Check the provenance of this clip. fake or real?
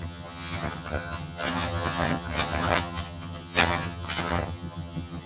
fake